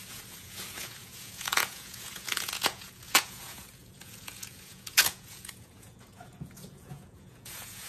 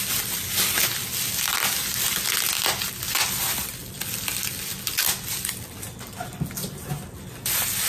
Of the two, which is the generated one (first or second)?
first